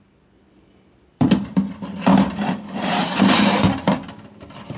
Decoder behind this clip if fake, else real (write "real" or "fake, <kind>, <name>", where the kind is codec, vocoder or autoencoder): fake, vocoder, BigVGAN v2